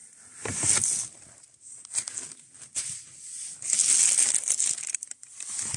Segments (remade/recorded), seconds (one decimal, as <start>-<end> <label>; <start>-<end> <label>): 0.0-5.8 recorded